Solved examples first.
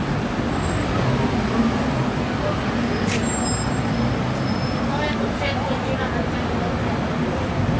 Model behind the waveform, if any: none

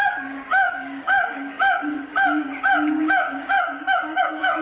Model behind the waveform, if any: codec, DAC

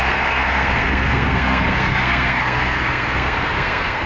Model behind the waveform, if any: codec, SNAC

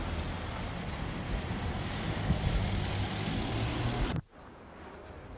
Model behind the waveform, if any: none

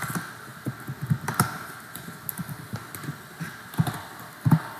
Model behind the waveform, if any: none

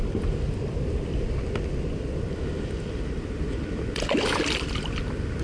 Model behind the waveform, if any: vocoder, BigVGAN v2